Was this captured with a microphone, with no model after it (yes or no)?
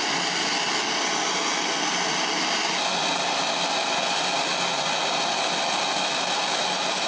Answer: yes